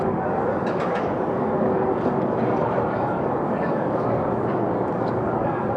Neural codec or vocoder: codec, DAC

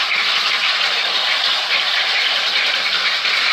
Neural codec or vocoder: none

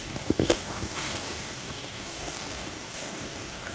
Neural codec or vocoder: codec, DAC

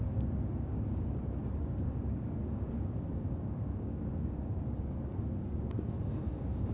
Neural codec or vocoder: codec, DAC